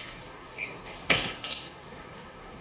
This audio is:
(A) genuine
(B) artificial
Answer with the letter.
B